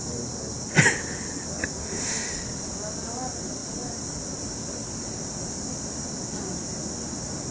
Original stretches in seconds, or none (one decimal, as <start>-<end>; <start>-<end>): 0.0-1.8; 2.3-7.5